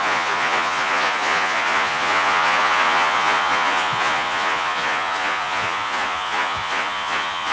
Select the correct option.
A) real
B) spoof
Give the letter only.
B